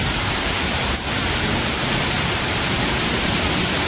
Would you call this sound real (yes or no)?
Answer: no